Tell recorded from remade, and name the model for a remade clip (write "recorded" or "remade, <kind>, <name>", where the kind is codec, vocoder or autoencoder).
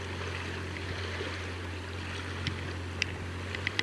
recorded